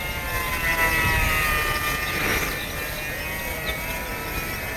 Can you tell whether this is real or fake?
real